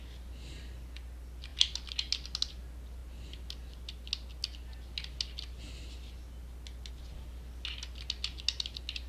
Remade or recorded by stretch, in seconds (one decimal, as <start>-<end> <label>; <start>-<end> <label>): 0.0-9.1 recorded

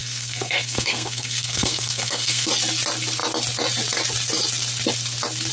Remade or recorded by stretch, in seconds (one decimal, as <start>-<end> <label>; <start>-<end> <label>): 0.0-2.5 remade; 2.5-5.5 recorded

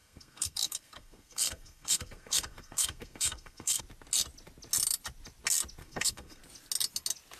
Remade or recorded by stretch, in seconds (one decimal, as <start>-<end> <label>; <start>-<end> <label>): 0.0-3.8 remade; 3.8-5.8 recorded; 5.8-6.4 remade; 6.4-7.4 recorded

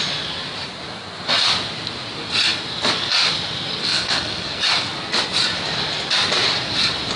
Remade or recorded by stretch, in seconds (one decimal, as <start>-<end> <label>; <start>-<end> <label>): 0.0-3.8 recorded; 3.8-4.6 remade; 4.6-7.2 recorded

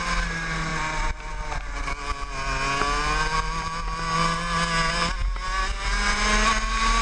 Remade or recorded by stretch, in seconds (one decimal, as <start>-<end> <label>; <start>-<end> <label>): 0.0-7.0 recorded

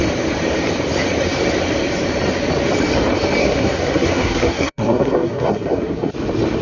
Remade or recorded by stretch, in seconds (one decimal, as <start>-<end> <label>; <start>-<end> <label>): 0.0-3.4 recorded; 3.4-6.1 remade; 6.1-6.6 recorded

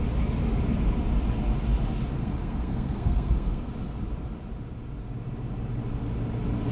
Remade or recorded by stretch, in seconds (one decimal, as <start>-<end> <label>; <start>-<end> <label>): 0.0-2.2 recorded; 2.2-3.7 remade; 3.7-6.7 recorded

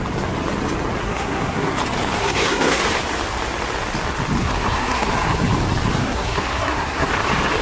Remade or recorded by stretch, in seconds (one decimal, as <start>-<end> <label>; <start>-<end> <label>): 0.0-1.0 recorded; 1.0-1.7 remade; 1.7-2.2 recorded; 2.2-2.8 remade; 2.8-4.4 recorded; 4.4-5.1 remade; 5.1-6.0 recorded; 6.0-7.1 remade; 7.1-7.6 recorded